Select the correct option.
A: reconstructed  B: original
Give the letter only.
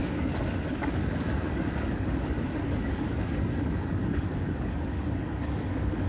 A